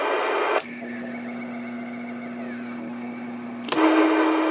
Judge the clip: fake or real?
real